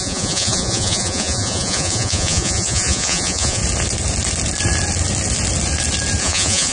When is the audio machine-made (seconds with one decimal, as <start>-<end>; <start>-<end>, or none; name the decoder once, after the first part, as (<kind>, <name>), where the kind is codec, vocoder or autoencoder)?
0.0-3.6 (vocoder, Vocos); 6.2-6.7